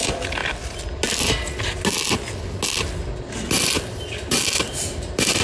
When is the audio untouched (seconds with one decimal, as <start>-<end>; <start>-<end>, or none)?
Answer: 0.4-3.2